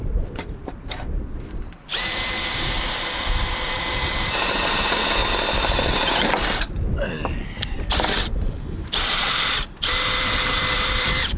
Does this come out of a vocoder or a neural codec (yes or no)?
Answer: yes